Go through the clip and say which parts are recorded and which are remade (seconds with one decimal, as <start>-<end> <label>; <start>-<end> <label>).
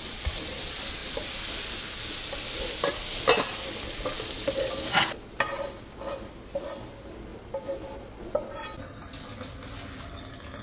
0.0-10.6 recorded